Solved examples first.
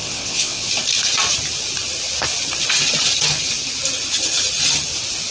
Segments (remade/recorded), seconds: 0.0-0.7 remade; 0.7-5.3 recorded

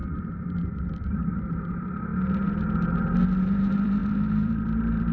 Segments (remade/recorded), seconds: 0.0-2.1 remade; 2.1-3.4 recorded; 3.4-5.1 remade

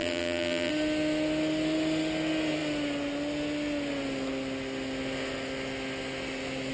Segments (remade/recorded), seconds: 0.0-0.7 remade; 0.7-6.7 recorded

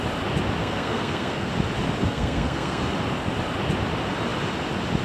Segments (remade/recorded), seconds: 0.0-0.6 recorded; 0.6-1.5 remade; 1.5-2.0 recorded; 2.0-2.8 remade; 2.8-5.0 recorded

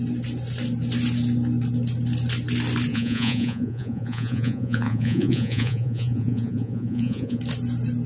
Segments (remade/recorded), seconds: 0.0-2.9 recorded; 2.9-7.4 remade; 7.4-8.1 recorded

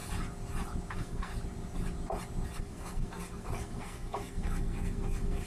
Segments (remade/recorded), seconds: 0.0-0.9 recorded; 0.9-1.3 remade; 1.3-2.6 recorded; 2.6-5.5 remade